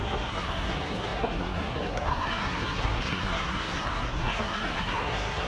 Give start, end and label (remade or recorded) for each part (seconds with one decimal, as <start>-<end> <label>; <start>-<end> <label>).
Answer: 0.0-5.5 remade